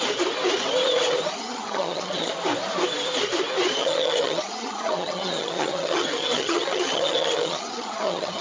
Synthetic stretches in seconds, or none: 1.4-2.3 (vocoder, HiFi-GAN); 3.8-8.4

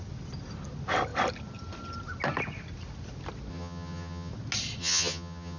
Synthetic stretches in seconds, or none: 3.5-4.3 (vocoder, HiFi-GAN); 4.8-5.6

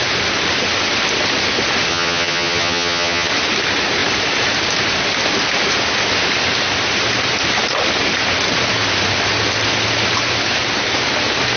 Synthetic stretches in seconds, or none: 1.9-3.3 (vocoder, HiFi-GAN)

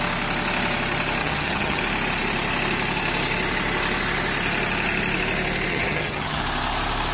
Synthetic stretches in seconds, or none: 1.2-1.8 (vocoder, HiFi-GAN); 5.7-6.4

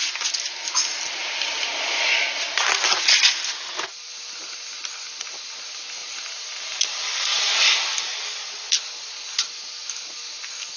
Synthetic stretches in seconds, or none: none

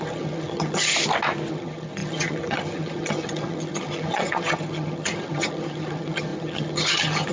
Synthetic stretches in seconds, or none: 0.0-0.9 (vocoder, HiFi-GAN); 1.5-7.3

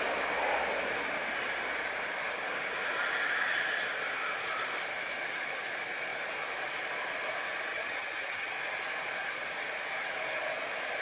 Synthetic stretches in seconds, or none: 7.7-8.5 (vocoder, HiFi-GAN)